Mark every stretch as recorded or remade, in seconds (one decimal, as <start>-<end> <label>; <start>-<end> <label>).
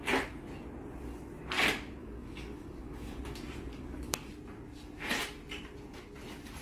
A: 0.0-2.0 recorded; 2.0-3.2 remade; 3.2-3.7 recorded; 3.7-4.3 remade; 4.3-6.6 recorded